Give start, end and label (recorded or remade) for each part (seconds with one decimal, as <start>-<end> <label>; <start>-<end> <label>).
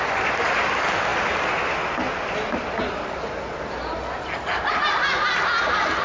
0.0-6.0 recorded